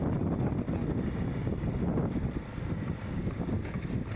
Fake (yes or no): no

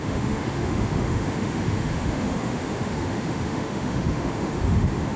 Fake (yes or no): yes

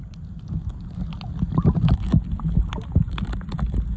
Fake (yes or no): no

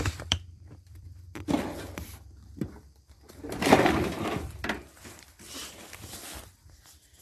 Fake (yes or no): yes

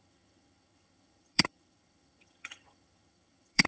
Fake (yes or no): yes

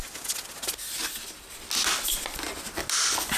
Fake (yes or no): no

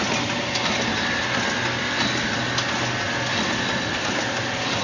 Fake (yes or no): no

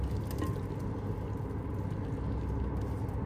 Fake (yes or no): no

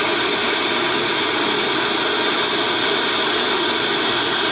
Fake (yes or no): no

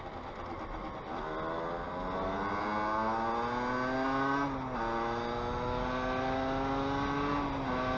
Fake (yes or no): no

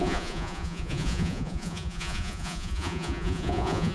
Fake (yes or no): yes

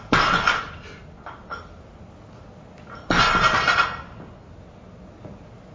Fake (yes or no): no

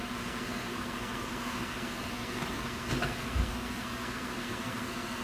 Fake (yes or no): yes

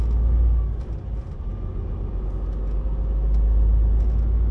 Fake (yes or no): no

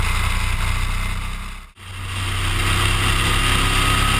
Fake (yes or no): no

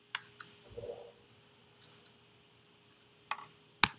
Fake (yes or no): no